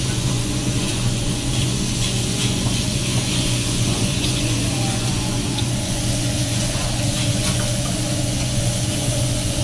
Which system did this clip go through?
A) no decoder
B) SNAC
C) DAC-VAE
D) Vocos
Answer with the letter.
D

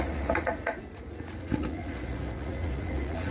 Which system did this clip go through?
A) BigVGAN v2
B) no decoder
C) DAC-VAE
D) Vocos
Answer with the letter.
D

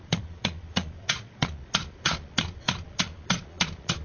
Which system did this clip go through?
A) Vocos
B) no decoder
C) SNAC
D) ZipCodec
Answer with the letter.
A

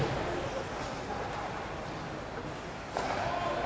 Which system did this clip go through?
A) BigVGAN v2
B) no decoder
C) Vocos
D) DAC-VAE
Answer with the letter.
B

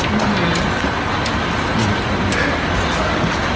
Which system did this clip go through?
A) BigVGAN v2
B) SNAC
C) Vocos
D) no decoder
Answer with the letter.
D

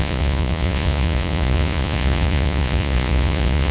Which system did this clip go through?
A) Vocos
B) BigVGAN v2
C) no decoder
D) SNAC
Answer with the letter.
A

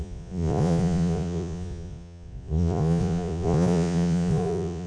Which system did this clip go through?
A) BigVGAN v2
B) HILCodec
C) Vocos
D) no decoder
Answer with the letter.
C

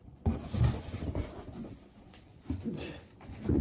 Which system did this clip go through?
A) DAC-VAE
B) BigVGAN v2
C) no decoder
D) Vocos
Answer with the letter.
D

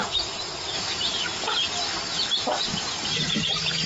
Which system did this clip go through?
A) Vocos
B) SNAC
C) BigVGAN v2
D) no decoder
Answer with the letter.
D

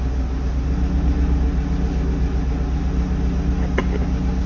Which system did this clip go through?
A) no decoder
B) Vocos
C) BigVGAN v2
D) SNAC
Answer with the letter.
A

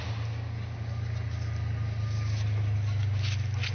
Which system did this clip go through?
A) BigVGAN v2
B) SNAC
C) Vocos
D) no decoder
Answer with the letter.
D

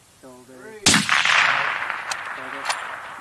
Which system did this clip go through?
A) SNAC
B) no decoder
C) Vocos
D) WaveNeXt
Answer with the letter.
B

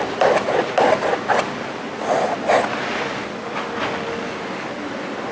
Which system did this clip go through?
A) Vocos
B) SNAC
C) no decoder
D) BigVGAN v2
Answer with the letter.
C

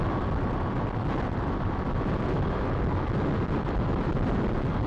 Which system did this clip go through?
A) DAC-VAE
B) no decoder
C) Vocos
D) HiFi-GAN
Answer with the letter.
B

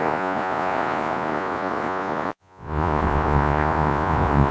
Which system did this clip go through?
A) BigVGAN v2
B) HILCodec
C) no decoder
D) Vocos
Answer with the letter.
D